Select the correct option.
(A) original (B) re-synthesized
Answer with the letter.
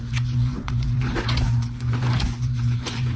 B